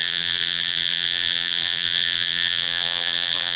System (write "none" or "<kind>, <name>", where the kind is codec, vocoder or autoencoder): vocoder, BigVGAN v2